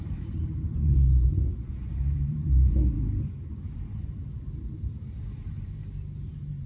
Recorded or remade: remade